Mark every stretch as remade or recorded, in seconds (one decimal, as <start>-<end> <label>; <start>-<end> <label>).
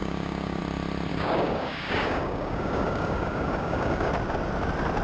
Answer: 0.0-0.6 remade; 0.6-1.1 recorded; 1.1-4.1 remade; 4.1-5.0 recorded